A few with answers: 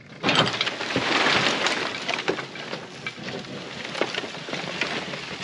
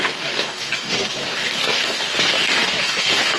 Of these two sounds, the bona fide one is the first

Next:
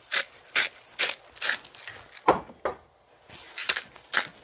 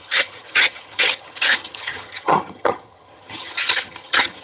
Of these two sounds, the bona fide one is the first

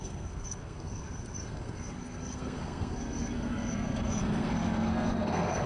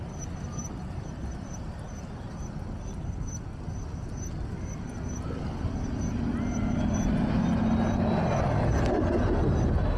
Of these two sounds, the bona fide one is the second